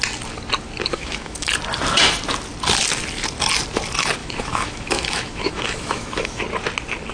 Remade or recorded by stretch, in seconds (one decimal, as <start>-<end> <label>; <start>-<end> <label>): 0.0-0.9 recorded; 0.9-1.5 remade; 1.5-4.2 recorded; 4.2-6.4 remade; 6.4-7.1 recorded